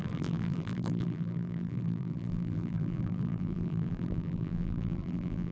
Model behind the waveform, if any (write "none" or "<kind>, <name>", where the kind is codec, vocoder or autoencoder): vocoder, BigVGAN v2